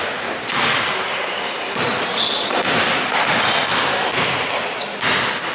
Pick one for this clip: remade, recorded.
recorded